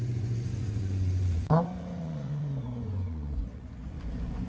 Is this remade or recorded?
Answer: remade